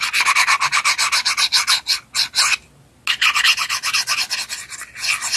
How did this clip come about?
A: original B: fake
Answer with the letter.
A